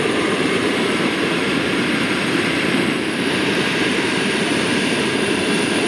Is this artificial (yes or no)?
yes